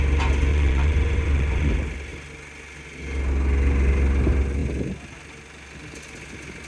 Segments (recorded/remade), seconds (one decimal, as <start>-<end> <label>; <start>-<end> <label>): 0.0-0.5 recorded; 0.5-1.7 remade; 1.7-6.7 recorded